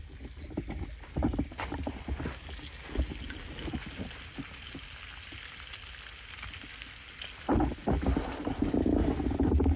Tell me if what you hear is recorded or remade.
recorded